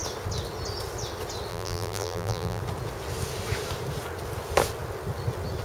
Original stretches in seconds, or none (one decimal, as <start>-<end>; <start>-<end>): 0.0-1.5; 2.6-5.6